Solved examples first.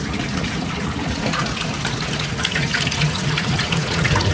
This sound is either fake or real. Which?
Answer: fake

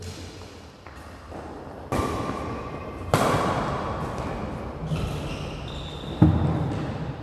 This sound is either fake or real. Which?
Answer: real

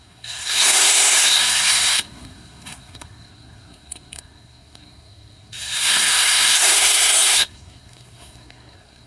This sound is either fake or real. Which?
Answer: fake